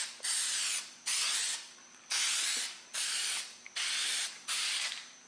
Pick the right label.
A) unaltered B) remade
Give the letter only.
A